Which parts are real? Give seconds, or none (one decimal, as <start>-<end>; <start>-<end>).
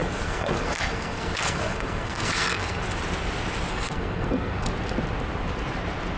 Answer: 2.8-3.7; 4.7-6.2